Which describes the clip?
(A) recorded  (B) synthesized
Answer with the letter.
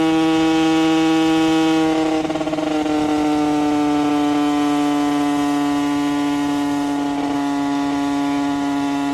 A